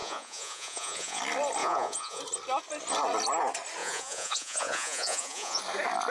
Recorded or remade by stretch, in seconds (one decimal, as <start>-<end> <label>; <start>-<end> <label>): 0.0-1.2 remade; 1.2-1.6 recorded; 1.6-2.2 remade; 2.2-3.8 recorded; 3.8-5.6 remade; 5.6-6.1 recorded